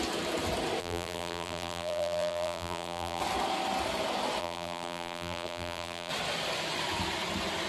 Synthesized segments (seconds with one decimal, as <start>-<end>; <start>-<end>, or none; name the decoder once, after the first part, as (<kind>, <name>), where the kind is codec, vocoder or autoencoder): 0.8-3.2 (vocoder, BigVGAN v2); 4.4-6.1